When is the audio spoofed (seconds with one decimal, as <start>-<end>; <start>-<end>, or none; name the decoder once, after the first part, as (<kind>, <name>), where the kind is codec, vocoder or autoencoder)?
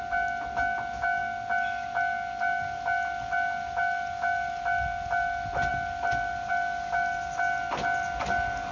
none